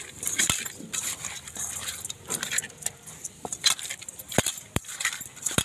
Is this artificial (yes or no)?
yes